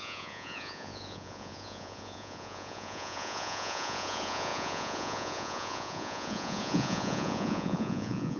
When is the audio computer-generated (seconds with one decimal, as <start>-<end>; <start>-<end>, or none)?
0.0-8.4